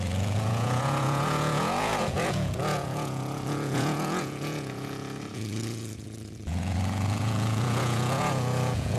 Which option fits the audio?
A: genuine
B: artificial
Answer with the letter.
B